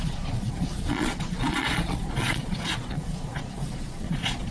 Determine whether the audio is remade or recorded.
remade